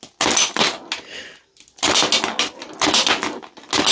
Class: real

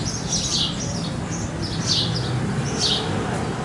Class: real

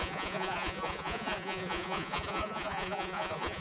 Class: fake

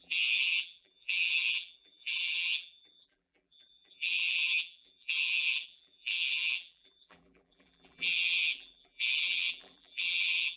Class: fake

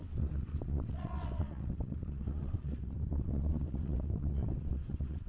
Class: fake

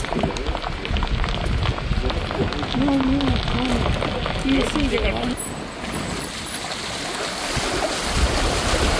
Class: real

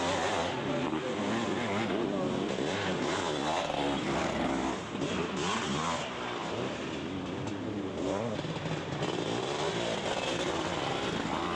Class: real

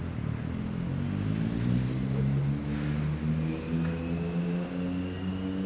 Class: real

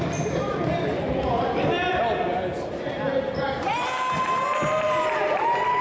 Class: real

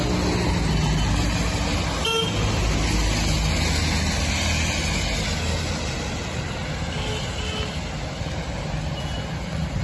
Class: real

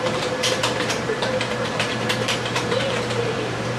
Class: fake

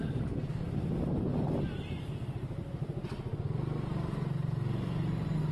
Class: real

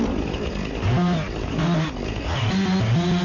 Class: real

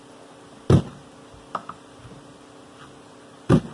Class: real